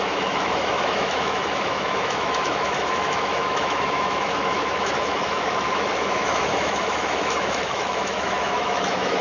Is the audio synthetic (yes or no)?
yes